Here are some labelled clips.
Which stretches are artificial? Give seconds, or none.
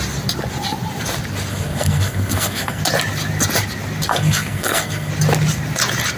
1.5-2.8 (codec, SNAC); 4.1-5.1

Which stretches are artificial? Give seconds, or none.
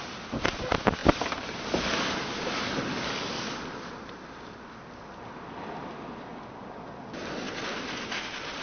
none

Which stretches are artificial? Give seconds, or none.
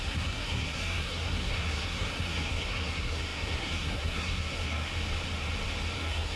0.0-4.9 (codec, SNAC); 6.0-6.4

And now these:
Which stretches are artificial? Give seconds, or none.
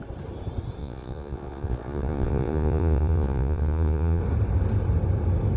0.8-4.2 (vocoder, Vocos)